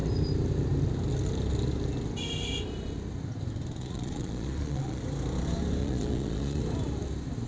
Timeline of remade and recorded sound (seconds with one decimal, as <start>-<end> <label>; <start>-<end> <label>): 0.0-3.8 recorded; 3.8-5.0 remade; 5.0-5.8 recorded; 5.8-6.6 remade; 6.6-7.5 recorded